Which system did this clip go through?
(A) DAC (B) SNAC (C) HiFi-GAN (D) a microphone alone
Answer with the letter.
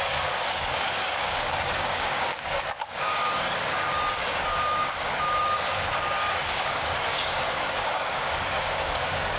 A